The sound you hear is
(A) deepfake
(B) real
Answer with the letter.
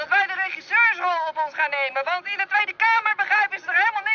B